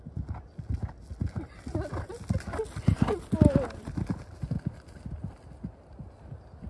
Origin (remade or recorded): recorded